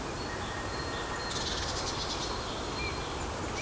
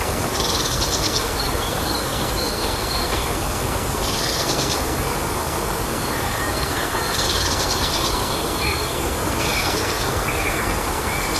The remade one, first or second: second